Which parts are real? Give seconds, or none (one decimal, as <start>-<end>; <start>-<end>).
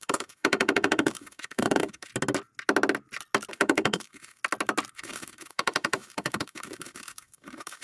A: 2.1-3.5; 4.4-4.9